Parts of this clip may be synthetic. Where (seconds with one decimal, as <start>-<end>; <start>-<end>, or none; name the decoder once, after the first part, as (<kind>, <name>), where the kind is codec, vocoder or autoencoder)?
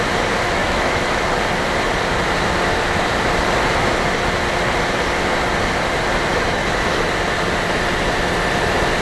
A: 0.6-1.2 (autoencoder, DAC-VAE); 6.3-7.1